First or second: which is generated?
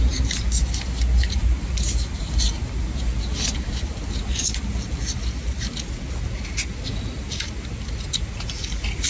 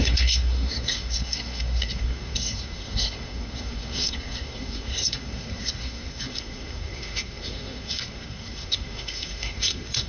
second